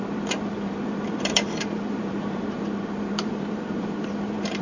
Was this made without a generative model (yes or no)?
no